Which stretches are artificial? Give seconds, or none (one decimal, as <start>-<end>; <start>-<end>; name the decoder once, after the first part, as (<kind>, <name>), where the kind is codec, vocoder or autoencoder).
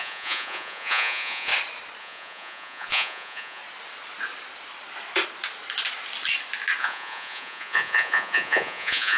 0.0-1.5 (vocoder, Vocos); 2.0-3.6; 6.8-9.2